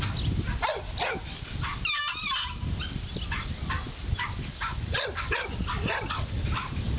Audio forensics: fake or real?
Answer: real